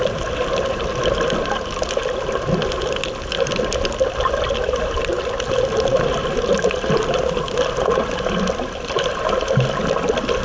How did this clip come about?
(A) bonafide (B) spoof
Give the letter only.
A